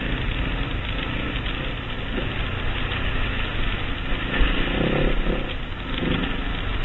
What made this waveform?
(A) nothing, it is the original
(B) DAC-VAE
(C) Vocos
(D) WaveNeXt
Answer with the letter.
A